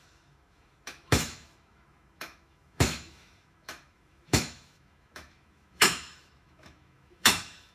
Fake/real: fake